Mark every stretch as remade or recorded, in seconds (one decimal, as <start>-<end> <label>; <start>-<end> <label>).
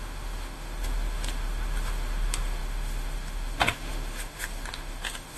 0.0-5.4 remade